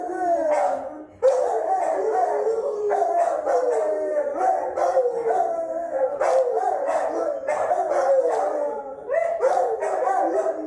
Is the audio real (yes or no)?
yes